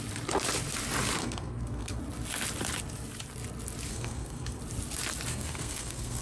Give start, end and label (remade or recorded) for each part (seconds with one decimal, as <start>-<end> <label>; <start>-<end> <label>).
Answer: 0.0-1.2 recorded; 1.2-2.0 remade; 2.0-3.9 recorded; 3.9-4.6 remade; 4.6-5.3 recorded; 5.3-6.2 remade